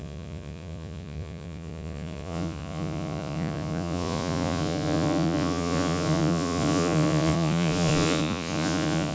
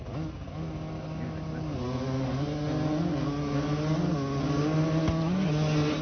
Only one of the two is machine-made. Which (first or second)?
first